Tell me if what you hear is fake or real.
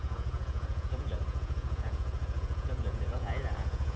fake